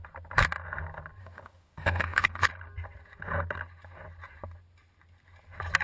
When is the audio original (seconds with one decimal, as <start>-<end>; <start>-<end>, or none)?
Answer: 0.0-1.2; 2.5-5.8